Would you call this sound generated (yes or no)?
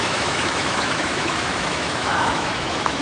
yes